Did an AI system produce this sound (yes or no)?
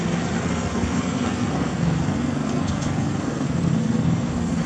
yes